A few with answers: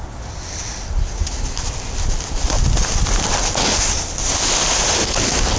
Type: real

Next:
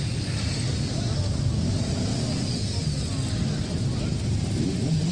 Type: real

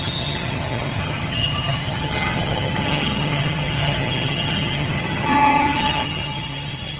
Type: fake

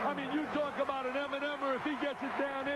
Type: fake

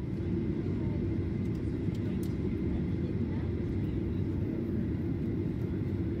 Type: real